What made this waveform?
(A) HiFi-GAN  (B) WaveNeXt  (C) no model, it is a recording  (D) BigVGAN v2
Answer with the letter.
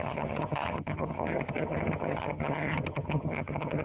A